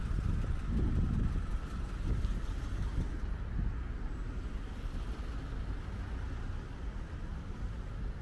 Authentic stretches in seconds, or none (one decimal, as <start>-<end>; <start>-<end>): 0.0-8.2